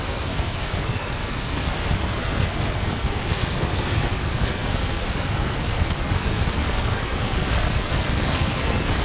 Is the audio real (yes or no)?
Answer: no